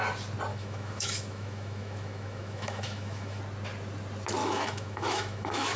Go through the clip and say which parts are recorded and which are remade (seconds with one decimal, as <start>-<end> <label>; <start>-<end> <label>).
0.0-0.5 recorded; 0.5-3.4 remade; 3.4-4.4 recorded; 4.4-5.8 remade